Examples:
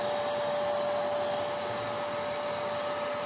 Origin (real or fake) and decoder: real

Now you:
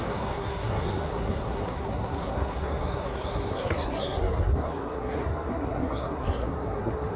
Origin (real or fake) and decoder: fake, codec, SNAC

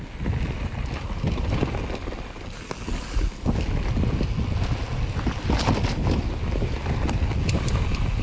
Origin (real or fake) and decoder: real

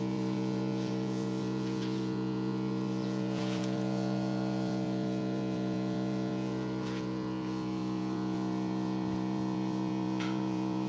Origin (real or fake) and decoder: fake, vocoder, Vocos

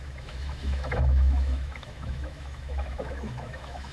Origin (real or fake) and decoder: fake, autoencoder, DAC-VAE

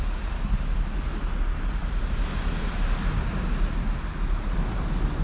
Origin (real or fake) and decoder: real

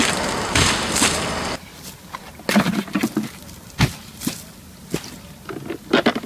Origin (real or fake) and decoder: real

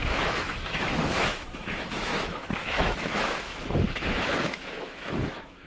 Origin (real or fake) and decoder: fake, autoencoder, DAC-VAE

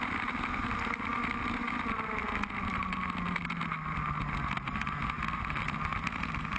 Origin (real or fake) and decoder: real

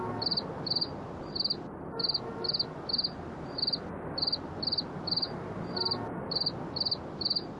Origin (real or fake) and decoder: real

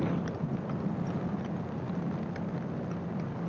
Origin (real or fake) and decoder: real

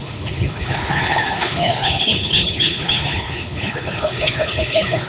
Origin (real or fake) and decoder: fake, codec, HILCodec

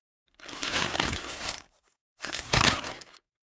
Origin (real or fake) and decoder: fake, codec, SNAC